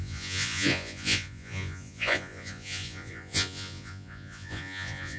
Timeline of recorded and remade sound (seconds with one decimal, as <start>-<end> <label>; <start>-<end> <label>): 0.0-5.2 remade